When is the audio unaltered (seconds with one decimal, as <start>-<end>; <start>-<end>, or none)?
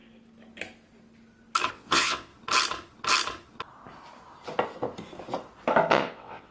0.0-1.7; 2.3-5.9